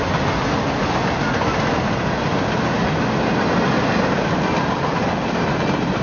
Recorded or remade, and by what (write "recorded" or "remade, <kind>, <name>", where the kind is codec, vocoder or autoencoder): recorded